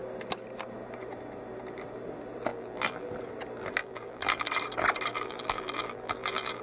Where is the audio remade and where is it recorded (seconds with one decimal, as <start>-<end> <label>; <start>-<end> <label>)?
0.0-2.5 recorded; 2.5-3.1 remade; 3.1-3.8 recorded; 3.8-4.5 remade; 4.5-5.1 recorded; 5.1-6.6 remade